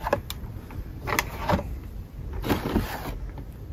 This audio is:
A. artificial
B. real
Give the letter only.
B